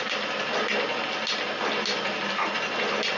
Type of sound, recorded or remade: recorded